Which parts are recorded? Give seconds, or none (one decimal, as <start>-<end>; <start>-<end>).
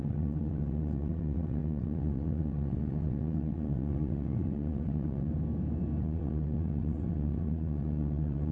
5.3-6.0